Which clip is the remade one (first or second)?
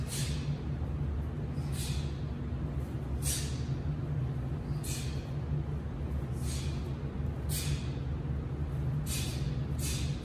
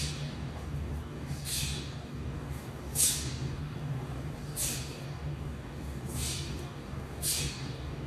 second